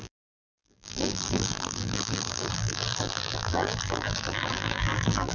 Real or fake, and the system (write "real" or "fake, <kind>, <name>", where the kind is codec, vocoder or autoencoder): fake, vocoder, BigVGAN v2